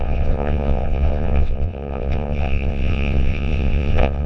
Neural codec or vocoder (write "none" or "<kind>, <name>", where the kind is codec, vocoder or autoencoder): vocoder, WaveNeXt